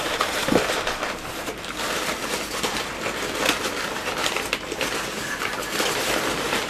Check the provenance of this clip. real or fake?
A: real